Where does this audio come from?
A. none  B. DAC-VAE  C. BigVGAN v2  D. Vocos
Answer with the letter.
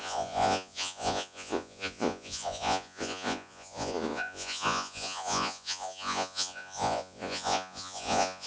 D